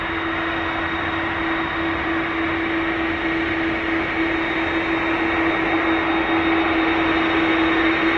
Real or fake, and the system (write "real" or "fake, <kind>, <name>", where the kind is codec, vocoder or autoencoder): real